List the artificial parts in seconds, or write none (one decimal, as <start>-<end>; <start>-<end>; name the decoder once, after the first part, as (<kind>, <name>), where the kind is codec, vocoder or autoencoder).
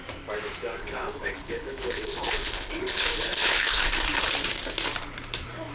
0.8-3.9 (codec, HILCodec)